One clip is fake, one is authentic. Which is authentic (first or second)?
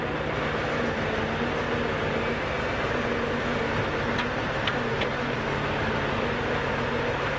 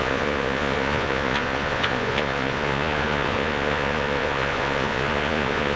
first